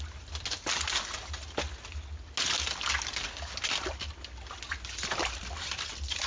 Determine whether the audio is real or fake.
real